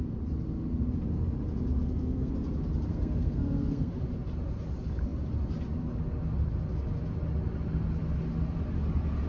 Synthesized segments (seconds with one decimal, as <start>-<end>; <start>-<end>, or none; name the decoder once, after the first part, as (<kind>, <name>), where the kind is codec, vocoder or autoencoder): 1.7-2.3 (codec, SNAC); 2.9-3.9

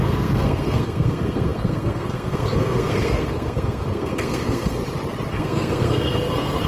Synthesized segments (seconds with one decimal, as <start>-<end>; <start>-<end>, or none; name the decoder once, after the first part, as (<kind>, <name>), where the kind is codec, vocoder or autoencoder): 0.0-4.8 (codec, SNAC); 5.3-6.7

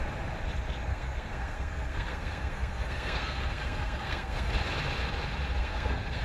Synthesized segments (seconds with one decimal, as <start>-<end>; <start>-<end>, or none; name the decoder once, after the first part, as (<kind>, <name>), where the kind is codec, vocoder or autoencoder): 0.9-4.5 (codec, SNAC); 5.6-6.2

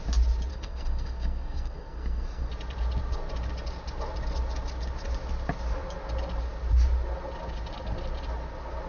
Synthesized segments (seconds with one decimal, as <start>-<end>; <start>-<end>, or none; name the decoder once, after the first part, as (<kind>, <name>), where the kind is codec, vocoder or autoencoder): 0.5-2.5 (codec, SNAC)

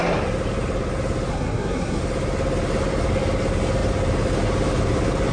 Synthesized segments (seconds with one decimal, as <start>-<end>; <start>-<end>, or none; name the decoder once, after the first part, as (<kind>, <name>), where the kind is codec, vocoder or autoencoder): 1.3-2.0 (codec, SNAC)